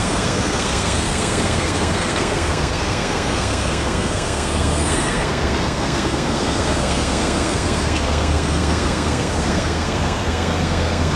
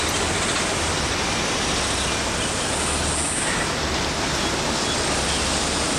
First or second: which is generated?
first